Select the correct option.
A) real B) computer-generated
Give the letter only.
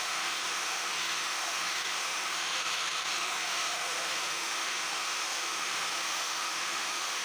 B